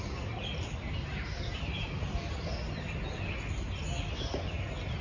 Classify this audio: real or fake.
real